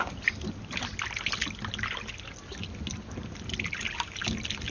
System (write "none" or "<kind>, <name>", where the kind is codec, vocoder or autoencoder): none